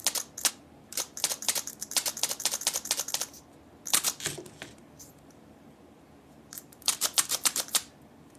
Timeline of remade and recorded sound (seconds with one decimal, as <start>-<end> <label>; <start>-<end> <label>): 0.0-0.5 recorded; 0.5-2.0 remade; 2.0-4.7 recorded; 4.7-8.4 remade